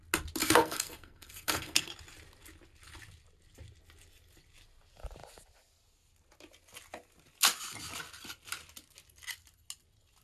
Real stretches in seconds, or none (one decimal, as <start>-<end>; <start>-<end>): 0.0-0.4; 1.9-10.2